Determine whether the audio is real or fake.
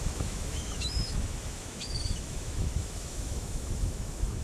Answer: fake